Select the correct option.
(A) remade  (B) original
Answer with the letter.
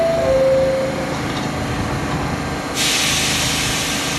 B